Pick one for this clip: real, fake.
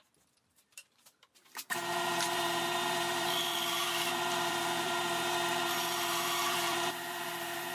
fake